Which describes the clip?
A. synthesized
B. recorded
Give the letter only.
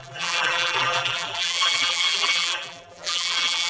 A